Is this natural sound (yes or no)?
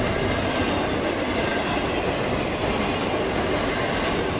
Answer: yes